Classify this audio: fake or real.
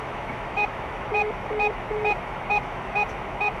fake